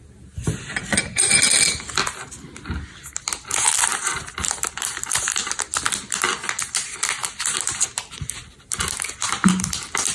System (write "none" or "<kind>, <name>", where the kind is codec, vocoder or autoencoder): none